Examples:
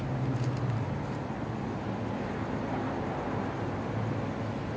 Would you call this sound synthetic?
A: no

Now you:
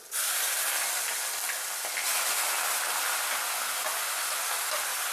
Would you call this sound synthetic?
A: no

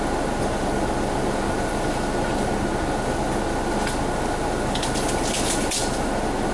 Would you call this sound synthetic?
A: no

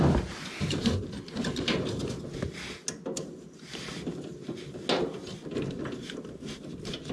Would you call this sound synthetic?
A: no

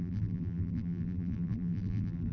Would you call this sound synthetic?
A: yes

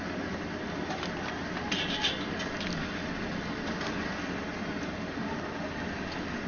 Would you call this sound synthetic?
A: no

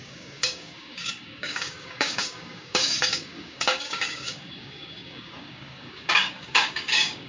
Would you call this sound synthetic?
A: yes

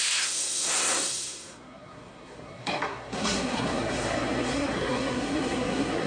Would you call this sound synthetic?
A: yes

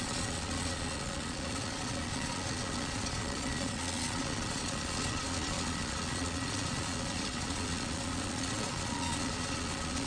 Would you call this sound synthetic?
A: yes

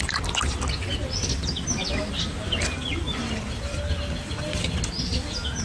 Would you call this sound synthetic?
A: no